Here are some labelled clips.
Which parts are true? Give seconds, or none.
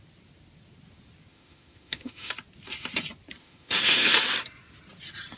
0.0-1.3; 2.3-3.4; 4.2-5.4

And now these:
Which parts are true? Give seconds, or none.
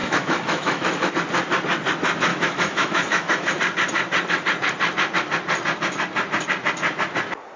1.1-2.3; 3.5-7.6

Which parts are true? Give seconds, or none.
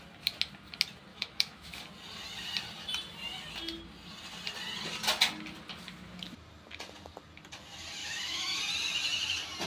0.0-1.1; 1.8-8.0; 8.6-9.7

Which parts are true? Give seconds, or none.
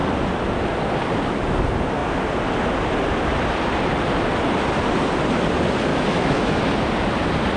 0.0-5.9; 6.6-7.6